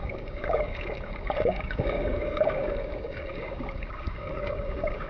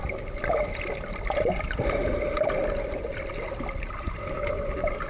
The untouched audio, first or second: second